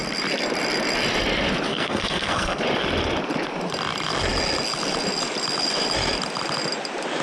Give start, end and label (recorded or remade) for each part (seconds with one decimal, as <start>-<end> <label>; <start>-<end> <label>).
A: 0.0-1.7 recorded; 1.7-2.6 remade; 2.6-7.2 recorded